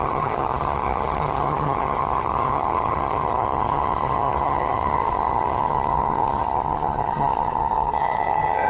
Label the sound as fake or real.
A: fake